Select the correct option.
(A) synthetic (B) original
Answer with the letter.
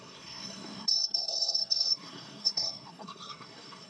A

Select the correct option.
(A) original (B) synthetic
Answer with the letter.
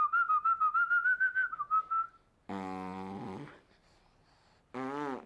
A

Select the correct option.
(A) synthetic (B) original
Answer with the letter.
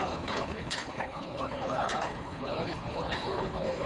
A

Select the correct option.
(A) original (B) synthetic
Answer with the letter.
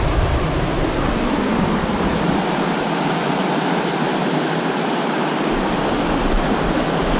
A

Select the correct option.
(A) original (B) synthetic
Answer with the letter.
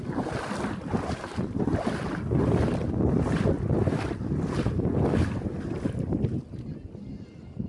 A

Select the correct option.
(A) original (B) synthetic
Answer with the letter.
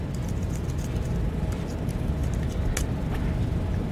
A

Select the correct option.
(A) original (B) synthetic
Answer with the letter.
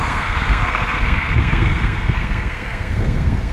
B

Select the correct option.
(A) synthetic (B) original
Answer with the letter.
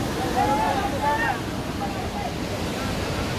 B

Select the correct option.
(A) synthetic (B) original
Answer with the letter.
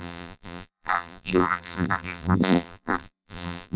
A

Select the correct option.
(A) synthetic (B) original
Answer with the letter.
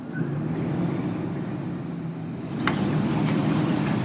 B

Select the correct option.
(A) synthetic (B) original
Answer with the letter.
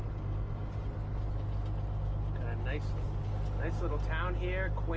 B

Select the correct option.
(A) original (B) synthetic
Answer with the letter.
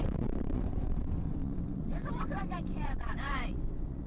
B